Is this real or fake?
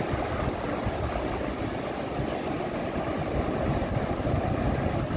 real